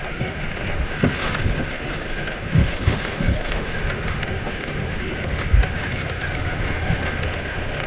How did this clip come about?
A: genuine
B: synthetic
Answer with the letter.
B